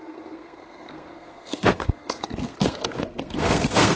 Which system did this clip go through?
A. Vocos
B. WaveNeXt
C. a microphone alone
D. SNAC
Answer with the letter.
D